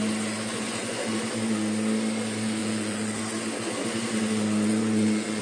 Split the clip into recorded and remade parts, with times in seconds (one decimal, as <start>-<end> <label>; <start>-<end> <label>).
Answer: 0.0-0.5 recorded; 0.5-1.2 remade; 1.2-2.6 recorded; 2.6-3.2 remade; 3.2-4.7 recorded; 4.7-5.4 remade